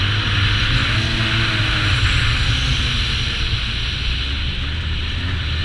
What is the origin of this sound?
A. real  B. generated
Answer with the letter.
A